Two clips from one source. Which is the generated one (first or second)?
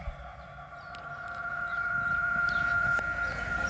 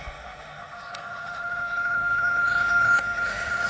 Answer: second